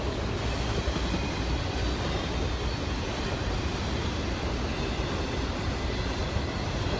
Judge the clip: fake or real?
real